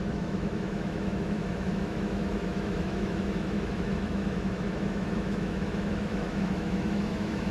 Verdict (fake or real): fake